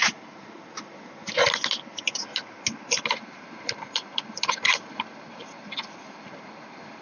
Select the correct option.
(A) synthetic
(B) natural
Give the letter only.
B